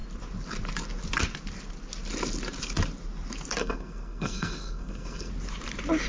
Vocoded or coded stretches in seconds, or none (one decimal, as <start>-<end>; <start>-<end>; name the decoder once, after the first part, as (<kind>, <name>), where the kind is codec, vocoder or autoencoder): 3.6-5.3 (codec, SNAC)